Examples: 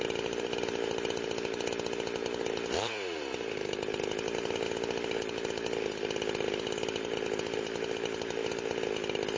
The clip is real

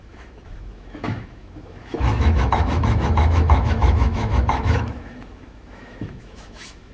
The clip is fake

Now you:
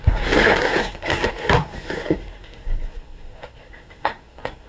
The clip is fake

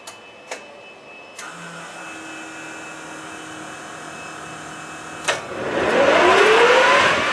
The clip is real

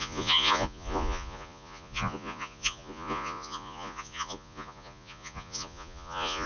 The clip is fake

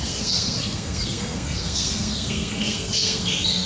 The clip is fake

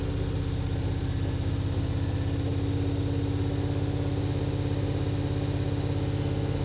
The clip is real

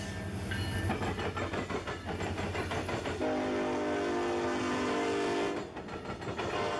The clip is real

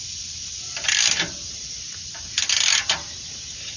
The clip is real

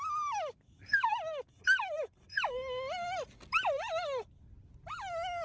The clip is real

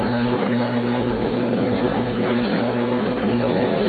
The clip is fake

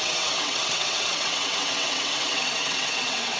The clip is fake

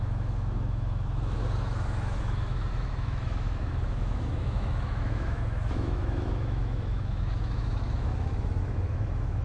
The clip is fake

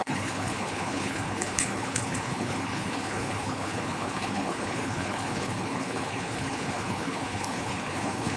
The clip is fake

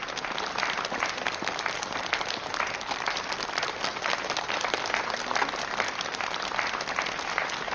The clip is real